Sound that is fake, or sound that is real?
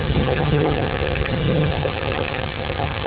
fake